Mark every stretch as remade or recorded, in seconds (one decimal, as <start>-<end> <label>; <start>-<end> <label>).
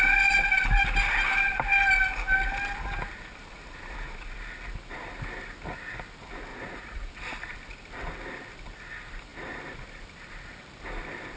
0.0-6.5 recorded; 6.5-7.1 remade; 7.1-11.4 recorded